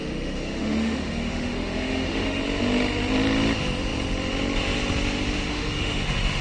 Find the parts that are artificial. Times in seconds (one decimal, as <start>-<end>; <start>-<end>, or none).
0.0-2.4; 5.5-6.4